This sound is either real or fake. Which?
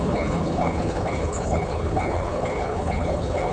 fake